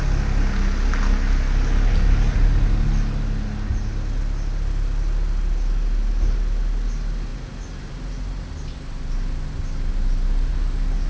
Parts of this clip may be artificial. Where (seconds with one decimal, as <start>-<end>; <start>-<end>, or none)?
none